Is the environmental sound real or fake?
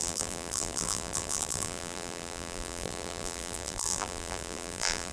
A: fake